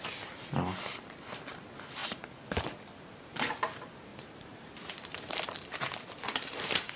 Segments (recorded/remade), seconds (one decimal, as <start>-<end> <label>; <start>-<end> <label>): 0.0-4.1 recorded; 4.1-7.0 remade